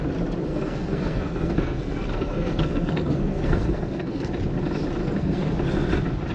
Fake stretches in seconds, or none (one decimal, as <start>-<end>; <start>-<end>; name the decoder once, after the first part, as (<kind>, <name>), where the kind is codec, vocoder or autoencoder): 0.5-4.3 (codec, SNAC); 5.0-5.5

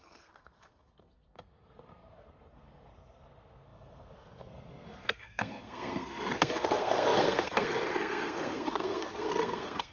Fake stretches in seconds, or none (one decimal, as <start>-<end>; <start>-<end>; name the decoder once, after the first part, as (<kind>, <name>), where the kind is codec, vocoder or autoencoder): 0.0-9.9 (codec, SNAC)

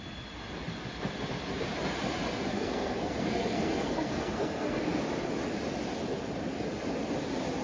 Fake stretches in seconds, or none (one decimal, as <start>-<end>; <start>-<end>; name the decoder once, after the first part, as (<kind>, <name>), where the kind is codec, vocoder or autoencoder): 2.5-4.8 (codec, SNAC)

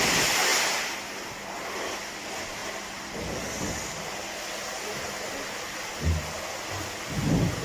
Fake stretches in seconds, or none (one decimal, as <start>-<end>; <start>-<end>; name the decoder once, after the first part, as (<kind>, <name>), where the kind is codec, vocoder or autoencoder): none

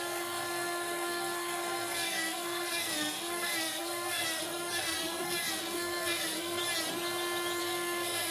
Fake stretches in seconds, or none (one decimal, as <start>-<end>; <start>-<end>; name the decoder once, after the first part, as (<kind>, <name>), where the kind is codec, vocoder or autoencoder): 0.0-6.6 (codec, SNAC); 7.6-8.3

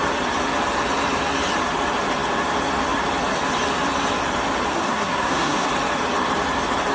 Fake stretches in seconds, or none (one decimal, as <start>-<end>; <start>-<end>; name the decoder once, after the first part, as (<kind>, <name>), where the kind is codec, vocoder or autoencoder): 4.7-5.7 (codec, SNAC)

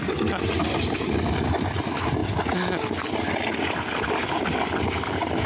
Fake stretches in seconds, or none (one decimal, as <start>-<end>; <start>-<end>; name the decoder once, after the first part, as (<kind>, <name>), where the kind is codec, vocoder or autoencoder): none